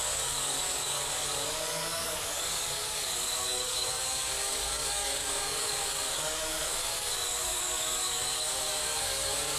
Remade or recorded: remade